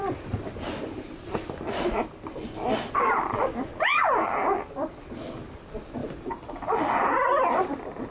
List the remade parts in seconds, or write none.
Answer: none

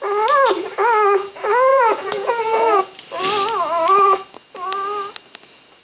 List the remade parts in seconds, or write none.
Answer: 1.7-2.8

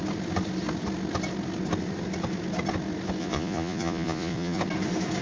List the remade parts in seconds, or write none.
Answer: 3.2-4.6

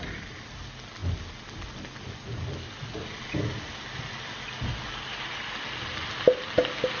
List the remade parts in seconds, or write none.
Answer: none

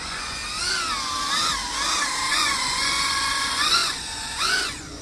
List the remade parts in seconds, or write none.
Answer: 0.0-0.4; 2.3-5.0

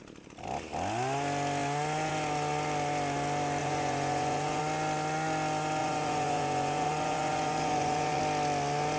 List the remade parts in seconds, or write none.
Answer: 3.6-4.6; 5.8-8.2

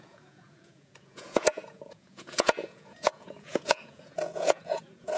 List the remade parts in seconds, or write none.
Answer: 0.0-5.2

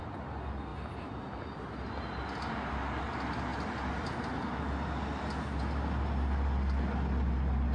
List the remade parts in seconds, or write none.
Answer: none